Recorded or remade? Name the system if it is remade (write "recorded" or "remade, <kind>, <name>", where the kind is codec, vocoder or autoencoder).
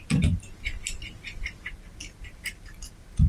recorded